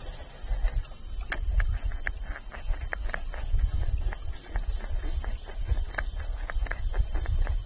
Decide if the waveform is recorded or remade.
recorded